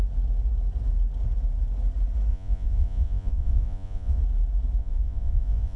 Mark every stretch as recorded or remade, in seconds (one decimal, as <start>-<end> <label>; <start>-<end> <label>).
0.0-2.3 recorded; 2.3-4.2 remade; 4.2-4.8 recorded; 4.8-5.8 remade